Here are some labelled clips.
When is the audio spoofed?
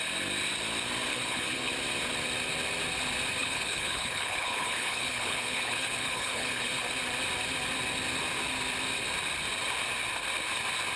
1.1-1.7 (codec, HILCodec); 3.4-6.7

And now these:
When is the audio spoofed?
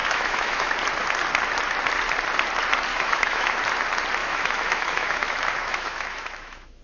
0.0-0.7 (autoencoder, DAC-VAE); 2.9-3.6; 4.2-6.8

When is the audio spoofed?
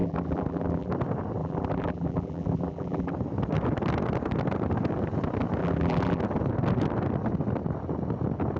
0.0-0.9 (vocoder, BigVGAN v2); 1.4-3.1; 5.6-6.2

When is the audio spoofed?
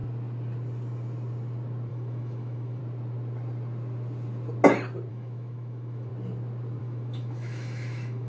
1.9-2.8 (autoencoder, DAC-VAE); 5.1-6.1; 6.8-8.3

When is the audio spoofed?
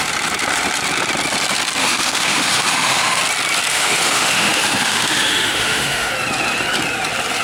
1.8-3.2 (autoencoder, DAC-VAE); 3.7-6.1